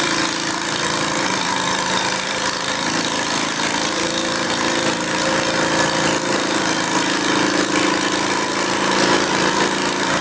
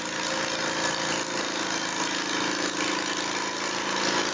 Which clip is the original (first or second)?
second